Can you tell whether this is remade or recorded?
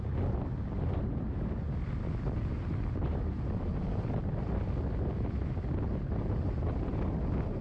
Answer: recorded